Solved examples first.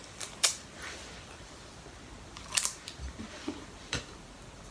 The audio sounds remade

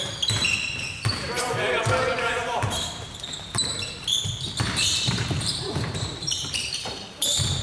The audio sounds remade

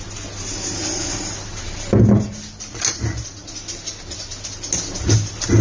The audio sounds recorded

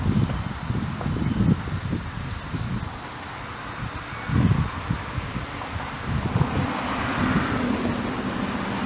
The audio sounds recorded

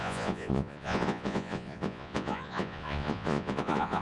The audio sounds remade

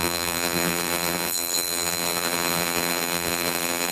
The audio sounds remade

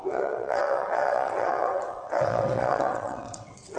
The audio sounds remade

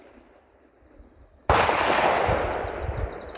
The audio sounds recorded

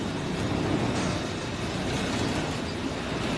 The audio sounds recorded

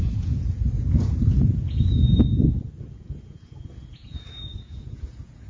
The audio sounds remade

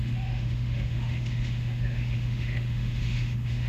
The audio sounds remade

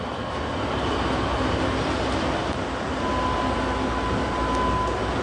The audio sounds recorded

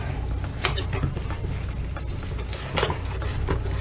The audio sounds recorded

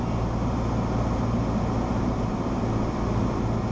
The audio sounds recorded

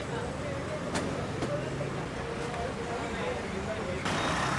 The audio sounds recorded